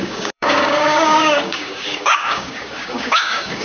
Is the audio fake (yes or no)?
yes